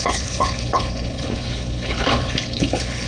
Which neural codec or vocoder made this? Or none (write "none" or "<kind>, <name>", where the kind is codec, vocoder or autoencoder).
codec, HILCodec